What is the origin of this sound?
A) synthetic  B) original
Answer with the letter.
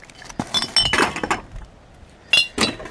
B